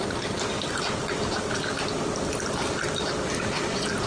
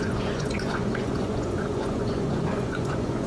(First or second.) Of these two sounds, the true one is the first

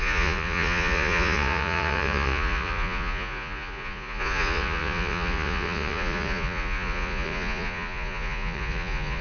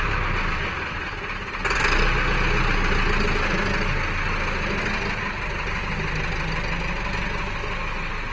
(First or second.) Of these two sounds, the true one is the second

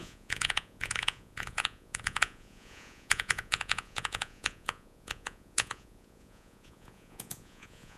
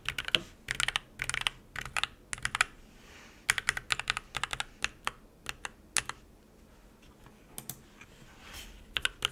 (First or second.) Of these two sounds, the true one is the second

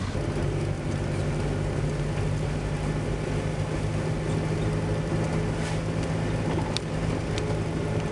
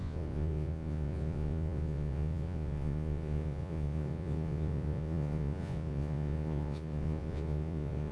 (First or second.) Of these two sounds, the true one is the first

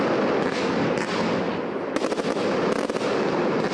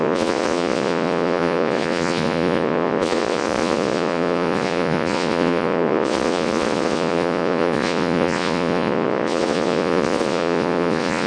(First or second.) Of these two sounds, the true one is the first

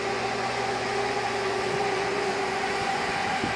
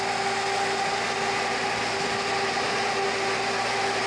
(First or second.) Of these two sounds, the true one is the second